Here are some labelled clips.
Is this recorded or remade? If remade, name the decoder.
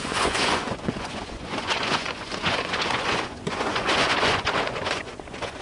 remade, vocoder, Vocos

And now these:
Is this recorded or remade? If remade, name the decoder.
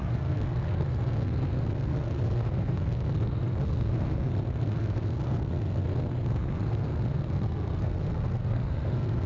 remade, codec, SNAC